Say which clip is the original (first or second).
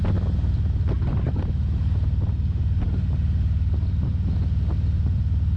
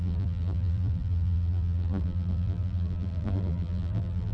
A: first